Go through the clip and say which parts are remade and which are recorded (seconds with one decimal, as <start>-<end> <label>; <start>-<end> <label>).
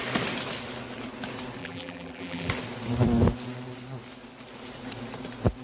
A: 0.0-1.6 recorded; 1.6-2.5 remade; 2.5-5.6 recorded